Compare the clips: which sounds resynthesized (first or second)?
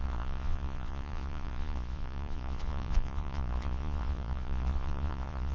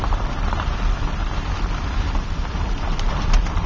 first